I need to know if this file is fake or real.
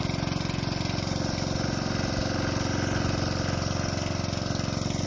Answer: real